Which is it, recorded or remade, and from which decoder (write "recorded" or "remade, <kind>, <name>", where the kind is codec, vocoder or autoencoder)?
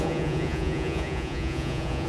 remade, vocoder, Vocos